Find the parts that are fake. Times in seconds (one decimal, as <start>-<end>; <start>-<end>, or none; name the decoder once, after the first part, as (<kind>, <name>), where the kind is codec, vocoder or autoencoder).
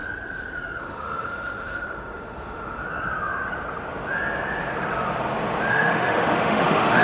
0.8-2.8 (autoencoder, DAC-VAE); 5.7-7.0